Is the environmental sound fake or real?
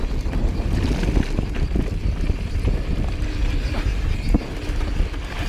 real